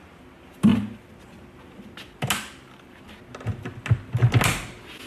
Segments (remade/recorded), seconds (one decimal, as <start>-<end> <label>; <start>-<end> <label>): 0.0-5.1 recorded